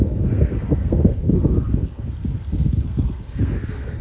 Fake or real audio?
fake